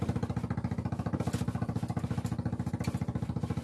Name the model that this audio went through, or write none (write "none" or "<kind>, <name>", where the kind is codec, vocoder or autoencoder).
none